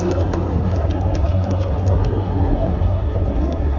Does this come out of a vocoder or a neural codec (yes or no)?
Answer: yes